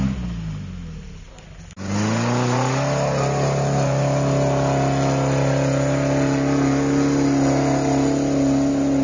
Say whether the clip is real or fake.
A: real